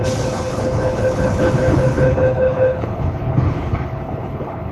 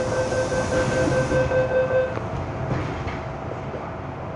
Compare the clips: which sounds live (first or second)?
second